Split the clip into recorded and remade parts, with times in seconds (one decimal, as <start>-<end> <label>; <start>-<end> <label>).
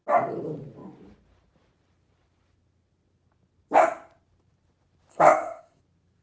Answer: 0.0-5.1 recorded; 5.1-5.8 remade; 5.8-6.2 recorded